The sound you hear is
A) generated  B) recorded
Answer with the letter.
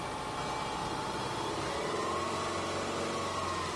B